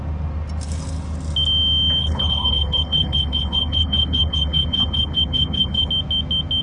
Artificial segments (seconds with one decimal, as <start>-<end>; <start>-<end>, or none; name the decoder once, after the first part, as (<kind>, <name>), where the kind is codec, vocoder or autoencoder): 2.0-5.9 (codec, HILCodec)